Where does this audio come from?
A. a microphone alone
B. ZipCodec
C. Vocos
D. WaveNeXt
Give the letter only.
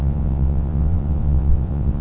D